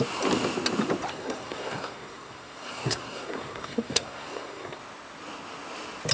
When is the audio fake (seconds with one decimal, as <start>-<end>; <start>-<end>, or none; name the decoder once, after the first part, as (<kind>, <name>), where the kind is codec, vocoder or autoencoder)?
1.1-4.8 (codec, SNAC)